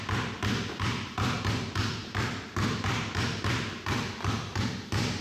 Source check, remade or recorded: remade